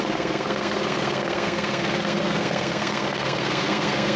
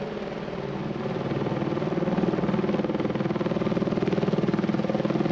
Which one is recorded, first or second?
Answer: second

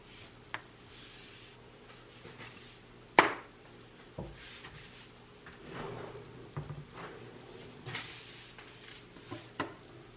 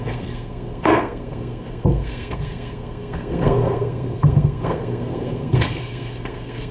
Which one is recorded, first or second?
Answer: first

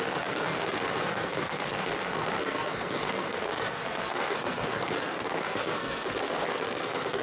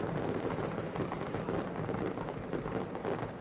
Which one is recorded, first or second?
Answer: second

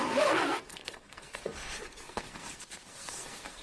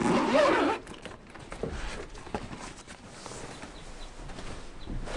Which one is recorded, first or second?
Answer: second